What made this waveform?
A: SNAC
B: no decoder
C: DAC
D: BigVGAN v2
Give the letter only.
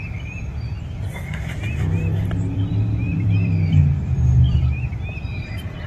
D